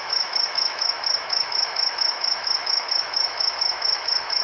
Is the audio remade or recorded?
remade